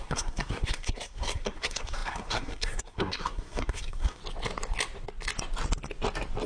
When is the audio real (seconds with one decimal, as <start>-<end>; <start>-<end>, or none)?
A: 4.2-6.5